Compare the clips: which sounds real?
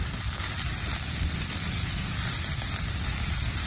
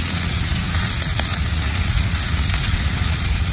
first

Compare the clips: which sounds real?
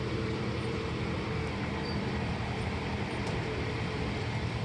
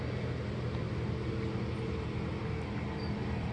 second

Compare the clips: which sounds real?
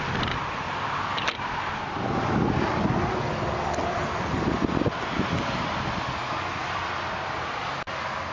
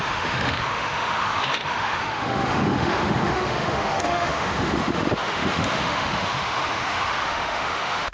first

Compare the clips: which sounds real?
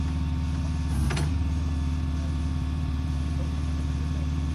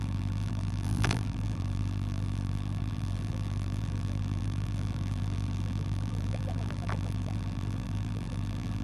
first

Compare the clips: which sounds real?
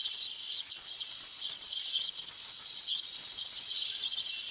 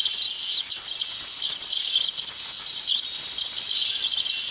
second